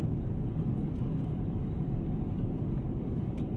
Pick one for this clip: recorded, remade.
remade